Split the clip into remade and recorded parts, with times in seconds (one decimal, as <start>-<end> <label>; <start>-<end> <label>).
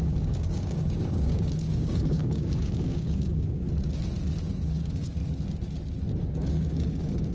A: 0.0-3.6 remade; 3.6-4.4 recorded; 4.4-5.2 remade; 5.2-6.2 recorded; 6.2-7.3 remade